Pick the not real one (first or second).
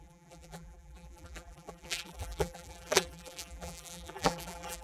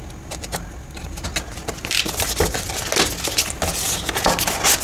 first